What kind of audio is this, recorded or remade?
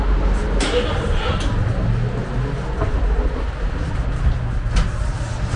recorded